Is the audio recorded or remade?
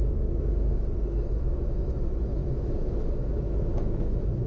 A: remade